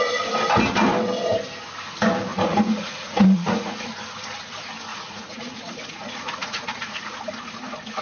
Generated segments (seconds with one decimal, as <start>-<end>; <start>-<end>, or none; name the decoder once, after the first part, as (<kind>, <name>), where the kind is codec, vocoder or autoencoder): 2.3-3.9 (vocoder, Vocos); 4.9-7.3

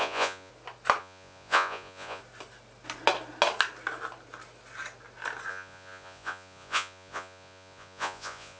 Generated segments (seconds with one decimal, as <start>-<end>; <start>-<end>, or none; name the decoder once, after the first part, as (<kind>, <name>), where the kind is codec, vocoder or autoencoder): 0.0-0.5 (vocoder, Vocos); 1.0-2.2; 5.5-8.6

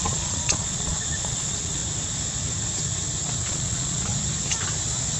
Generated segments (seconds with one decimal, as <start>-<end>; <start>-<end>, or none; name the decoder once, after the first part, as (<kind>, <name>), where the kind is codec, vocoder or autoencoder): 0.0-1.8 (vocoder, Vocos); 3.5-4.1

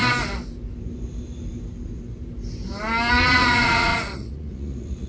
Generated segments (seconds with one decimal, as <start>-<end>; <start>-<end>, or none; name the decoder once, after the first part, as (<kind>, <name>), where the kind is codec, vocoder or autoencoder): 3.1-5.1 (vocoder, Vocos)